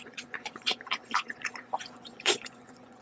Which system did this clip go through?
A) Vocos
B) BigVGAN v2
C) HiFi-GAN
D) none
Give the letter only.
A